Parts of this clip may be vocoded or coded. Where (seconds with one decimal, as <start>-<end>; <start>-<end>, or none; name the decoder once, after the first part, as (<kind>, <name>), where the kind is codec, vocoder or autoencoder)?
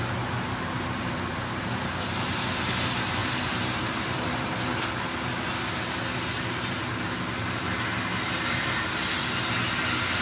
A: 3.2-3.9 (vocoder, BigVGAN v2)